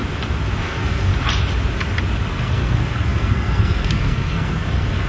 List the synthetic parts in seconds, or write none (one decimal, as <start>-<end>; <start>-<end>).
0.6-1.1; 2.3-5.1